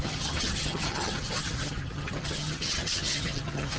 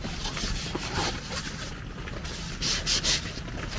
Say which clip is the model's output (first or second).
first